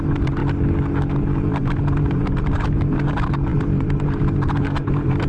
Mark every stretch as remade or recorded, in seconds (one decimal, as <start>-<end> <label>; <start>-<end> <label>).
0.0-0.4 remade; 0.4-1.2 recorded; 1.2-5.3 remade